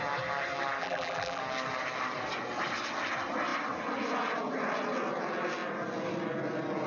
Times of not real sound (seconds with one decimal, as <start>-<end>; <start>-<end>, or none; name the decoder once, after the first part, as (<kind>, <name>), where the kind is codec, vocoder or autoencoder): 0.8-1.4 (vocoder, BigVGAN v2)